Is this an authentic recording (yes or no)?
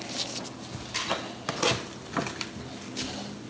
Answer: yes